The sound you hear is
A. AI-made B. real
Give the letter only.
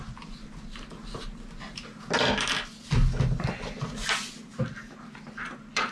B